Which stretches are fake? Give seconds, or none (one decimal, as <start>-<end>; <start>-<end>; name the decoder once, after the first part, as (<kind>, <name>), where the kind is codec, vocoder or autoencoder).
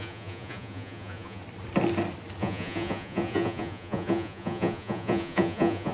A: 0.0-1.4 (vocoder, Vocos); 2.4-5.9